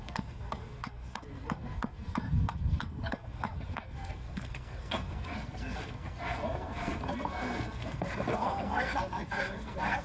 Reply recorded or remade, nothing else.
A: remade